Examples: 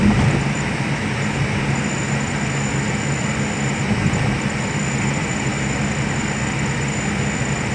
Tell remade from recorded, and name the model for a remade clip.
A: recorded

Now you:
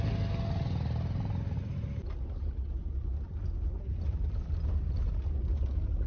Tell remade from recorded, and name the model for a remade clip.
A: recorded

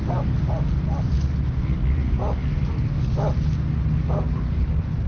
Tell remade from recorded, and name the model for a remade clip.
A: recorded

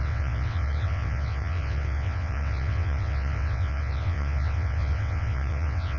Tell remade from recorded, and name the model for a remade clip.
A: remade, vocoder, WaveNeXt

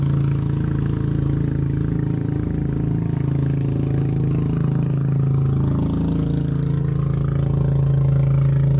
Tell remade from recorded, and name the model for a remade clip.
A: recorded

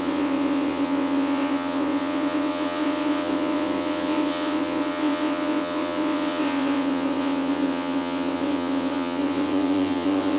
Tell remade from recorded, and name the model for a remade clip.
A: remade, vocoder, WaveNeXt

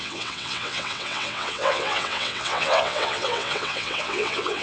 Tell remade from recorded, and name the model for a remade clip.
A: remade, vocoder, WaveNeXt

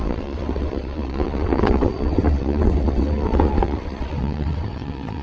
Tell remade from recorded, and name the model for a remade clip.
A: remade, vocoder, WaveNeXt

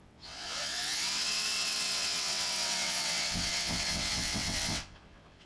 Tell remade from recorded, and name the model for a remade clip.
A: remade, vocoder, WaveNeXt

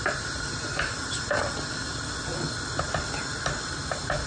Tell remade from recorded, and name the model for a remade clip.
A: recorded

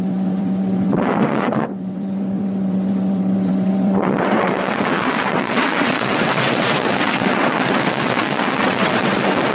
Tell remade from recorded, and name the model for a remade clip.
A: remade, vocoder, WaveNeXt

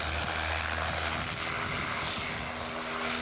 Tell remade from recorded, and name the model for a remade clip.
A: recorded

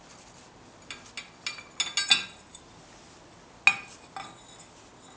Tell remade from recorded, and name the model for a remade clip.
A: recorded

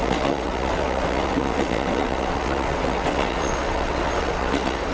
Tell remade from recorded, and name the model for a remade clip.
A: remade, vocoder, WaveNeXt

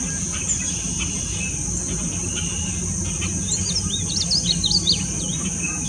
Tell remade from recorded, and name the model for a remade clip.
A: recorded